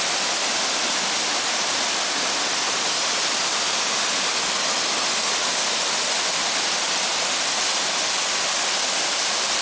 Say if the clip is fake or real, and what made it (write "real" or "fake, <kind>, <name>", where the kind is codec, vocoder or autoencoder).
real